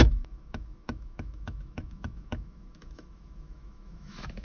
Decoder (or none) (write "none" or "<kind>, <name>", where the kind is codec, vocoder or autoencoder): autoencoder, DAC-VAE